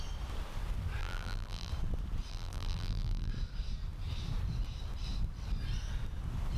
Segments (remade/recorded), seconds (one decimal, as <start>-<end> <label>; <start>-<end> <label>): 0.0-1.0 recorded; 1.0-1.7 remade; 1.7-2.3 recorded; 2.3-3.3 remade; 3.3-6.6 recorded